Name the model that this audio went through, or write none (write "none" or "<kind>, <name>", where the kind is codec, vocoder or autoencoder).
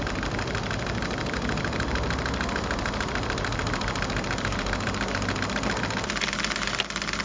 none